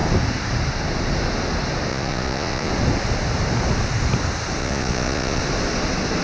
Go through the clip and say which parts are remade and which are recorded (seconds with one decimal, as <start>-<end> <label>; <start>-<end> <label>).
0.0-1.9 recorded; 1.9-2.7 remade; 2.7-4.6 recorded; 4.6-5.4 remade; 5.4-6.2 recorded